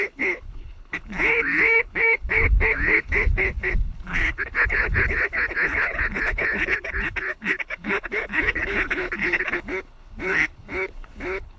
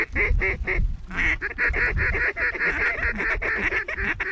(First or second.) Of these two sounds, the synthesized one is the first